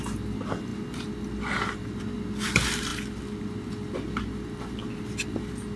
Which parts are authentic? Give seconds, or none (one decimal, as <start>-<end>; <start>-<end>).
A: 0.7-1.6